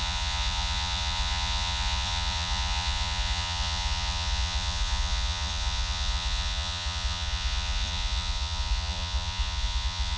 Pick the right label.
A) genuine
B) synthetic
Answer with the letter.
B